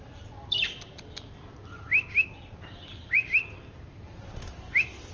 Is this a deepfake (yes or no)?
yes